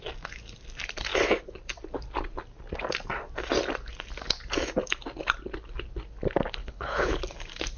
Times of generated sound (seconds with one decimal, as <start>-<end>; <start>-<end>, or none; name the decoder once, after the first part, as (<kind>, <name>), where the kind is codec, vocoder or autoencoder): 6.6-7.2 (codec, HILCodec)